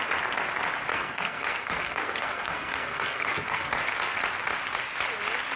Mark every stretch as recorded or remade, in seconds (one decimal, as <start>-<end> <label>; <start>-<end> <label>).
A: 0.0-0.9 recorded; 0.9-3.7 remade; 3.7-5.6 recorded